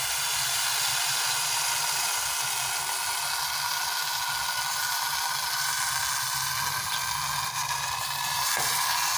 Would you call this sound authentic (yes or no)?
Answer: yes